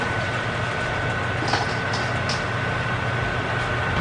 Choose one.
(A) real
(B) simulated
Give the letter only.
B